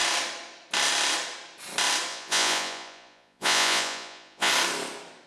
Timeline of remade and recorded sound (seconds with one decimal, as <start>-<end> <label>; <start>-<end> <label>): 0.0-2.1 recorded; 2.1-4.5 remade; 4.5-5.3 recorded